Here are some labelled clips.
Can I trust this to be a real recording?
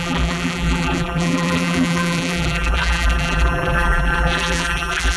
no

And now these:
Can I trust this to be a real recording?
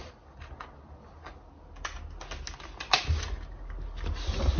yes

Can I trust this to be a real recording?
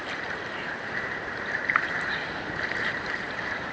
no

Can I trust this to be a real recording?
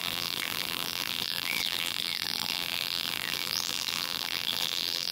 no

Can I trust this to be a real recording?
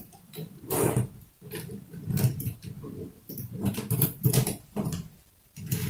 no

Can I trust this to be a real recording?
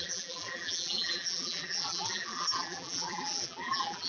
no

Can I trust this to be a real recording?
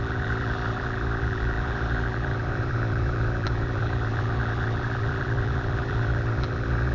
no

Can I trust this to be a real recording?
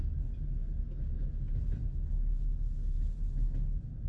yes